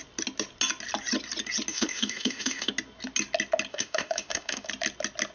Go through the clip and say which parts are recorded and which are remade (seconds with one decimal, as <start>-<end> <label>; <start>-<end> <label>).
0.0-1.7 recorded; 1.7-2.7 remade; 2.7-3.7 recorded; 3.7-4.7 remade; 4.7-5.3 recorded